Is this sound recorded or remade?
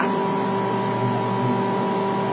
recorded